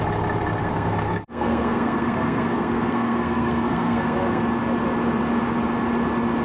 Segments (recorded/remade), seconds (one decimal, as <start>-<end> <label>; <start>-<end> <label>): 0.0-0.6 recorded; 0.6-4.4 remade; 4.4-6.4 recorded